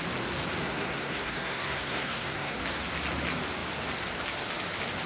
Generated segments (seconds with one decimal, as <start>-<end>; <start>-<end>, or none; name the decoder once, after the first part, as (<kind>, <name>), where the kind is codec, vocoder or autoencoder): 0.6-2.6 (codec, SNAC)